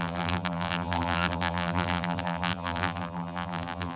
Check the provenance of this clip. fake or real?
fake